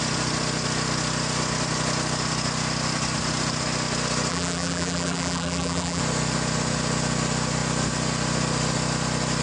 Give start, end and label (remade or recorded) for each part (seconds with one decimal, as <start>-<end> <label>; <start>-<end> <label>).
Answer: 0.0-4.3 recorded; 4.3-6.0 remade; 6.0-9.4 recorded